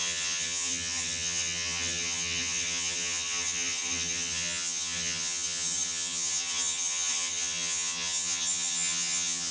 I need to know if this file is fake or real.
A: fake